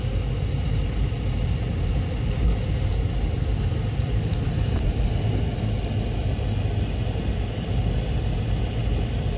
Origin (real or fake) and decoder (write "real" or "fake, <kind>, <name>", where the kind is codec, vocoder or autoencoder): real